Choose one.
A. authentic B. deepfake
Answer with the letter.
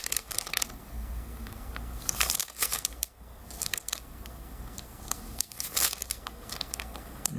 B